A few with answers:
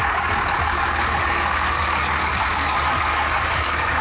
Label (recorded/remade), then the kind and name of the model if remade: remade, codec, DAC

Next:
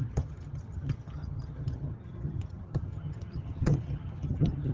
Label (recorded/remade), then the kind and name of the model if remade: remade, vocoder, HiFi-GAN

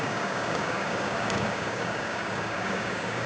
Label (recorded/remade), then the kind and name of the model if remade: remade, codec, DAC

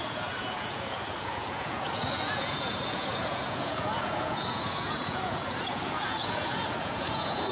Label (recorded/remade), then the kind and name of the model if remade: remade, vocoder, Vocos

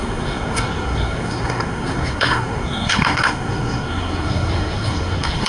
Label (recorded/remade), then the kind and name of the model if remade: remade, codec, SNAC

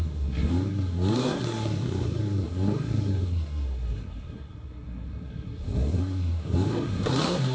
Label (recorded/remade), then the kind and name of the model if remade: remade, codec, SNAC